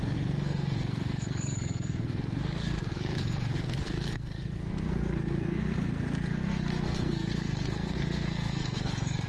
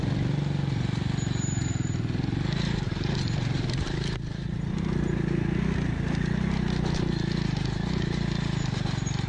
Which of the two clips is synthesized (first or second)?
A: first